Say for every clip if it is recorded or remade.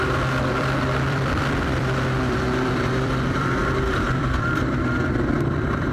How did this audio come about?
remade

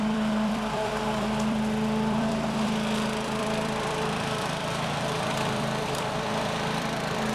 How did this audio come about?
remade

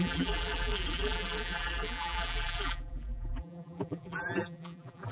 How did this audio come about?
remade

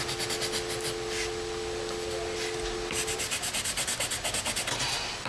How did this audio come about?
recorded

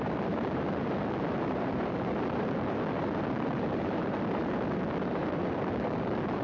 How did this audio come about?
remade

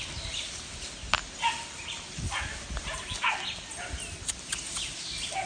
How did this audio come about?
recorded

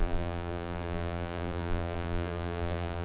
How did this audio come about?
remade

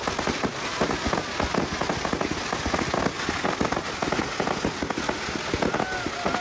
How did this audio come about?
recorded